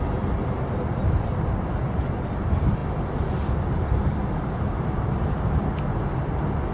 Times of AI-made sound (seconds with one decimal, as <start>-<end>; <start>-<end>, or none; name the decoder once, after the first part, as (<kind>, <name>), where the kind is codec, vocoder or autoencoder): none